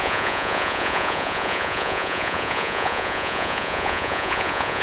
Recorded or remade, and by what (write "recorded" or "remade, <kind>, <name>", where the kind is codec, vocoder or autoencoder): remade, vocoder, Vocos